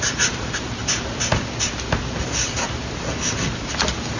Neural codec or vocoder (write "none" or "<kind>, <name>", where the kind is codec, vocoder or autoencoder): none